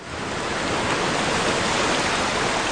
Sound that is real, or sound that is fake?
real